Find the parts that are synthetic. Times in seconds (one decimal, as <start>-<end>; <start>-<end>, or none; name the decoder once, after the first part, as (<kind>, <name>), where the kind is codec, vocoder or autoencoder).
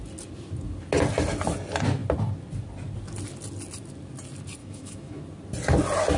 4.6-5.2 (autoencoder, DAC-VAE)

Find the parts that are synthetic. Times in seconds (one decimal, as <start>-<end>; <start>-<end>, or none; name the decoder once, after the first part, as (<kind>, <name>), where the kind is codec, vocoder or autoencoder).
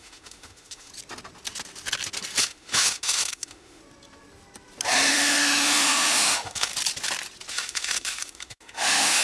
0.0-0.9 (autoencoder, DAC-VAE); 2.4-3.8; 5.1-6.7; 7.5-9.2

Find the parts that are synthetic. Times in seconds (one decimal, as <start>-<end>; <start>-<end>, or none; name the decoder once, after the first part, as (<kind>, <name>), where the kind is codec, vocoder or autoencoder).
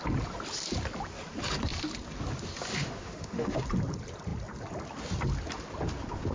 2.7-3.6 (autoencoder, DAC-VAE)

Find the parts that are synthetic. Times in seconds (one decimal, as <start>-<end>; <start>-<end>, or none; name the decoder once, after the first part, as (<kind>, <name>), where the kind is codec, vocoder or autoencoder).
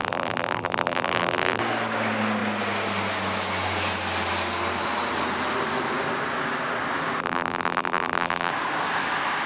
0.0-1.6 (vocoder, BigVGAN v2); 7.2-8.5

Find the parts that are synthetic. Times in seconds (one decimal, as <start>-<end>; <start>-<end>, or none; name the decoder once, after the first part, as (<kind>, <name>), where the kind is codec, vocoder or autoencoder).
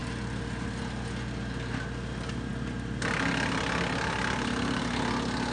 none